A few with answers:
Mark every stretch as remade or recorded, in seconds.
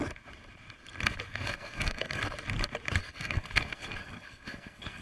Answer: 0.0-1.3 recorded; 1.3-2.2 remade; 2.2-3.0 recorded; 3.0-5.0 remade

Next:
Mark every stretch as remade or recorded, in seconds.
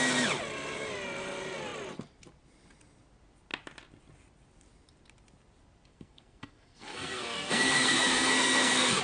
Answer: 0.0-5.9 recorded; 5.9-9.0 remade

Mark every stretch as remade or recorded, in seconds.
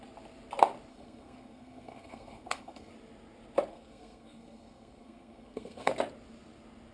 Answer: 0.0-0.9 recorded; 0.9-2.9 remade; 2.9-3.7 recorded; 3.7-5.9 remade; 5.9-6.9 recorded